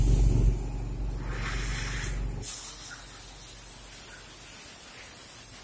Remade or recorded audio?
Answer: recorded